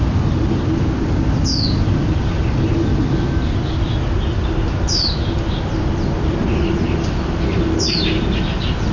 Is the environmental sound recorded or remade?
recorded